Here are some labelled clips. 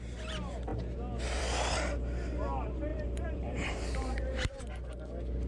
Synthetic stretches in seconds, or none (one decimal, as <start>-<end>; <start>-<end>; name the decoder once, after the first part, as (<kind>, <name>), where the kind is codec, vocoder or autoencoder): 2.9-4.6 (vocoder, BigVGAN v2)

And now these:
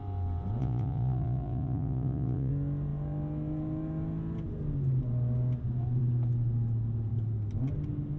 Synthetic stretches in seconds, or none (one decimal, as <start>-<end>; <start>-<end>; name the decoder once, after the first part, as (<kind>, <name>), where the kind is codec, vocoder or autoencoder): 0.6-2.5 (vocoder, Vocos)

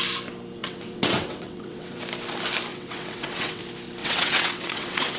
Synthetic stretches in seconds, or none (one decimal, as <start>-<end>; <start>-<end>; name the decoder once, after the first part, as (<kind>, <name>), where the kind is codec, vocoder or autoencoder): 0.6-2.0 (vocoder, WaveNeXt); 2.7-3.6; 4.0-5.2

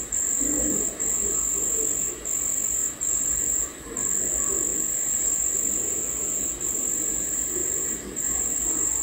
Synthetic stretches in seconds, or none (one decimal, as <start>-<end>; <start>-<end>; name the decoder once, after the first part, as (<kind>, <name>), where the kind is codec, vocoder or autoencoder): 2.8-3.3 (vocoder, BigVGAN v2); 4.7-6.4; 7.6-8.3

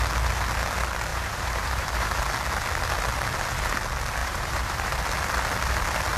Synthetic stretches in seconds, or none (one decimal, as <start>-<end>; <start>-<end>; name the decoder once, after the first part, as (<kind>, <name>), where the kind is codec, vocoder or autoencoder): 1.1-2.2 (vocoder, BigVGAN v2); 4.2-5.0